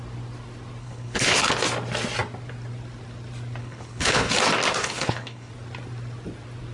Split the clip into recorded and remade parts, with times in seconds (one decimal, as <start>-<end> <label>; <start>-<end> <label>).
0.0-0.8 recorded; 0.8-1.5 remade; 1.5-3.6 recorded; 3.6-4.3 remade; 4.3-4.8 recorded; 4.8-5.5 remade; 5.5-6.7 recorded